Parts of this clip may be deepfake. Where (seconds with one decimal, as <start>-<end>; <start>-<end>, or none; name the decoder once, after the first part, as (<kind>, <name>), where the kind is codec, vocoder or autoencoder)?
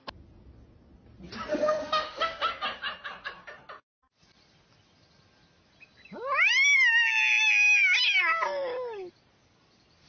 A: 1.5-2.5 (autoencoder, DAC-VAE)